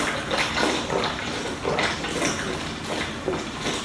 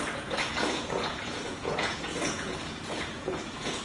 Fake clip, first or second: second